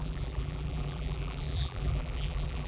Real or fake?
fake